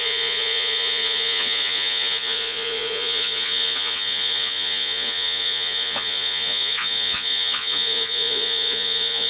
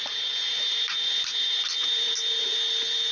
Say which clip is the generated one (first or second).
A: first